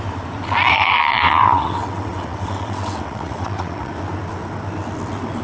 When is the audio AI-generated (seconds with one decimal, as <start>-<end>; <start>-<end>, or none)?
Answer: 0.7-3.9

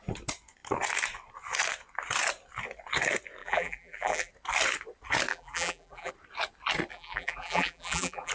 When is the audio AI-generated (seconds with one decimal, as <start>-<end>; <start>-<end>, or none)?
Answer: 3.4-4.3; 5.3-6.1; 6.9-8.3

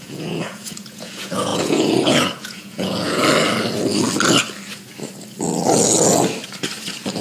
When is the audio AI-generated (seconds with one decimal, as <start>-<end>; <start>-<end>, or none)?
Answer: 0.0-3.2

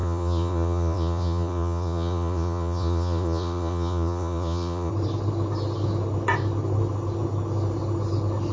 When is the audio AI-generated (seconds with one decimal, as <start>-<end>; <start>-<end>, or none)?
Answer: 0.0-4.9

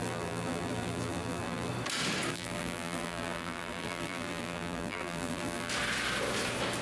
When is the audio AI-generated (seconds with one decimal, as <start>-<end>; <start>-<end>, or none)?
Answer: 0.0-1.7; 2.3-5.7

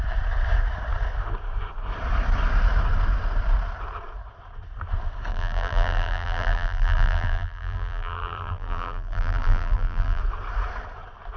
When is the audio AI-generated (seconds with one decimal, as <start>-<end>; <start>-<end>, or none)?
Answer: 5.3-10.2

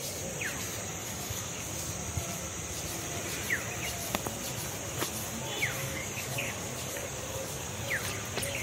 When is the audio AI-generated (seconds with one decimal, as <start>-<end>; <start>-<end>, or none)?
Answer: 1.0-1.9; 5.8-7.8

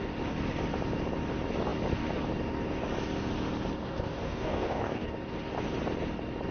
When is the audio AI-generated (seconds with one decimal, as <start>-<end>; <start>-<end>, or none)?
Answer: 3.8-5.1